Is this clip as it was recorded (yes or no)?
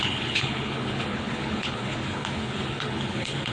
no